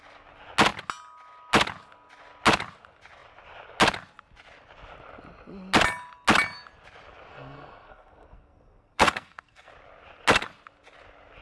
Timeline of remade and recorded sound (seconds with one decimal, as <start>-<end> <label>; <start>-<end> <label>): 0.0-7.3 recorded; 7.3-9.7 remade; 9.7-11.4 recorded